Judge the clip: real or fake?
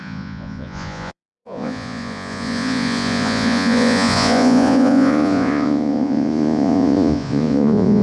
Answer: fake